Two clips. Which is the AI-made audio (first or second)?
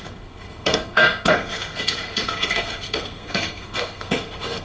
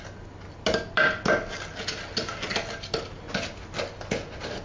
first